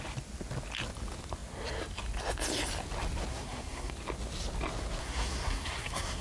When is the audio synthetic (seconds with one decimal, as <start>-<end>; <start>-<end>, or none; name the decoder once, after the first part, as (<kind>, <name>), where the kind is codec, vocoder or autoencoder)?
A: 3.3-3.9 (codec, SNAC); 5.0-6.2